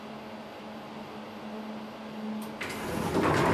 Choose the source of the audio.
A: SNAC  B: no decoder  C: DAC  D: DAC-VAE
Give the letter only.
B